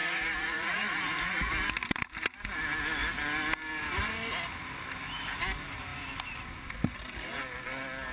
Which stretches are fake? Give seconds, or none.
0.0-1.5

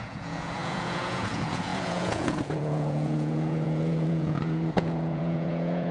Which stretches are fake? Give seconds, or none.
0.0-5.9